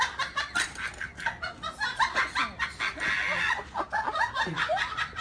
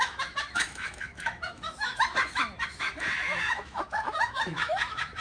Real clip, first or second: first